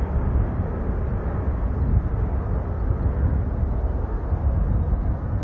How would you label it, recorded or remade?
recorded